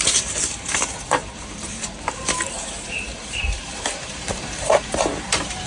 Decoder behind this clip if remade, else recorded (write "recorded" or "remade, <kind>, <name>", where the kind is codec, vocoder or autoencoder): remade, vocoder, BigVGAN v2